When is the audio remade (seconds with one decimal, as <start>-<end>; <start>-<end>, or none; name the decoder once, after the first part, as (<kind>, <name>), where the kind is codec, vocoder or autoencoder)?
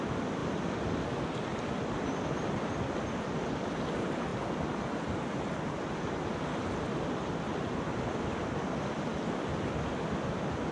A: 0.4-0.9 (vocoder, BigVGAN v2); 4.3-5.3